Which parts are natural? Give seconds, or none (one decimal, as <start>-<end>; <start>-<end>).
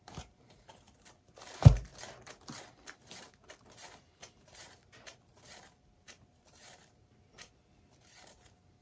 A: 1.9-3.2